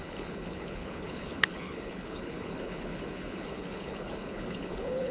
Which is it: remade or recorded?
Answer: remade